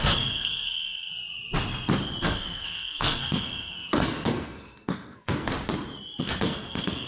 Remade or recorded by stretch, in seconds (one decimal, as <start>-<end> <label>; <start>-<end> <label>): 0.0-1.1 remade; 1.1-2.2 recorded; 2.2-5.5 remade; 5.5-6.2 recorded; 6.2-7.1 remade